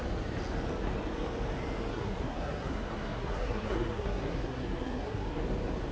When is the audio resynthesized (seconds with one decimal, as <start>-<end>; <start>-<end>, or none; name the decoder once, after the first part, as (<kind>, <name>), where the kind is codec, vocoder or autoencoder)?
1.9-5.4 (codec, SNAC)